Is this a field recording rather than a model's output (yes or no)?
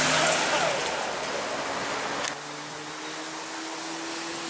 yes